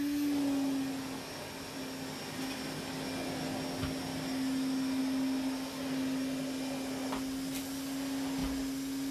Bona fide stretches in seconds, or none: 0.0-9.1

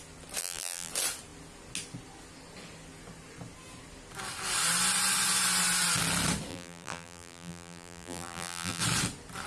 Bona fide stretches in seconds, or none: 0.0-0.4; 0.9-6.5; 8.8-9.5

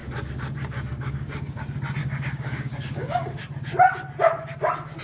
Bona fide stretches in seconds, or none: 1.6-2.0; 3.4-5.0

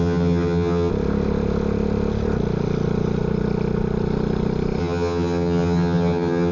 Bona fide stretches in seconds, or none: 0.9-4.8

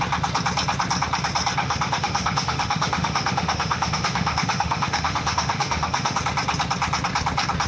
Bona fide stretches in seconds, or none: 0.0-1.6; 6.2-7.7

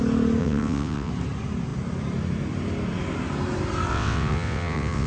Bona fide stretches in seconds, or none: 0.0-0.4; 1.1-3.9

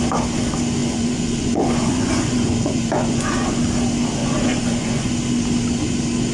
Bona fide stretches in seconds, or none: 0.0-0.8; 3.6-4.2; 5.1-6.3

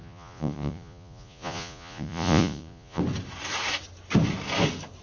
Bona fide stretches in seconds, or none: 3.0-5.0